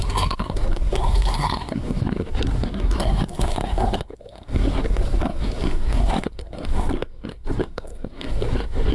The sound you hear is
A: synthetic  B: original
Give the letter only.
A